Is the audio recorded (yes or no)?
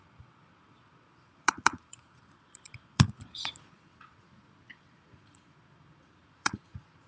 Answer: no